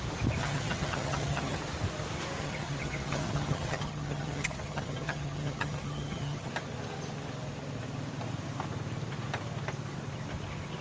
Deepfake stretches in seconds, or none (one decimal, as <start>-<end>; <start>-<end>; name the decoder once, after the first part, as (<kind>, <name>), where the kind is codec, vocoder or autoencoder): 0.4-1.6 (vocoder, HiFi-GAN); 2.4-6.5